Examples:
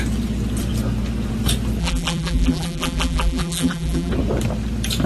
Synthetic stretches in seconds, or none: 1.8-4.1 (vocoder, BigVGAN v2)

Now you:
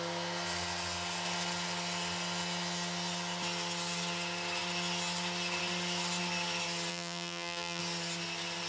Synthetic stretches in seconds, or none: 6.9-7.8 (vocoder, BigVGAN v2)